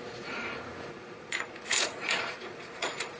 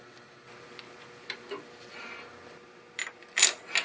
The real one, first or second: second